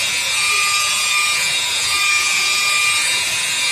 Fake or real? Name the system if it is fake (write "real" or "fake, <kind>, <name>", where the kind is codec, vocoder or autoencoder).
fake, vocoder, Vocos